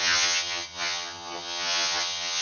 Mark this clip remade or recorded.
remade